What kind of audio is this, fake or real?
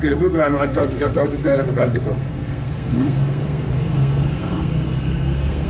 fake